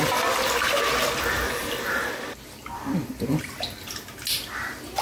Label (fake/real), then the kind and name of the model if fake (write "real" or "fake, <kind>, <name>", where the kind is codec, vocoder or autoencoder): real